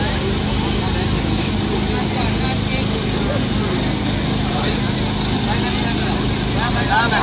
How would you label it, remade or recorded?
recorded